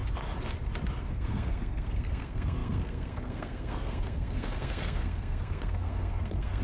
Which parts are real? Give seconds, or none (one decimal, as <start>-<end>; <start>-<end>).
0.0-1.0